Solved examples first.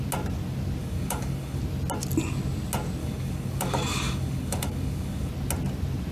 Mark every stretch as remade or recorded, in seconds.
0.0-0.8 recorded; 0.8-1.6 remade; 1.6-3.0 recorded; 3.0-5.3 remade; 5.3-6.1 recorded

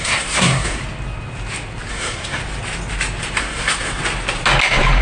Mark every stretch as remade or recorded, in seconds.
0.0-0.8 remade; 0.8-1.9 recorded; 1.9-2.4 remade; 2.4-3.4 recorded; 3.4-4.0 remade; 4.0-5.0 recorded

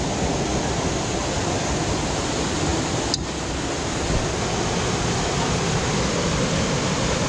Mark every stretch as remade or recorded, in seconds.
0.0-7.3 recorded

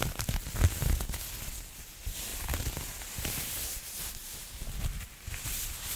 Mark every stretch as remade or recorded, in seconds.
0.0-6.0 recorded